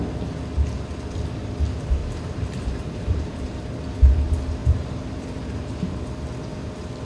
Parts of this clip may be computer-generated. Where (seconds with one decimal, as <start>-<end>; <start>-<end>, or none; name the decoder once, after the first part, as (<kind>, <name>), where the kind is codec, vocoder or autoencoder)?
2.0-3.6 (vocoder, BigVGAN v2); 4.6-6.1